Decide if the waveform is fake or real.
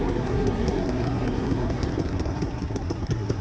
fake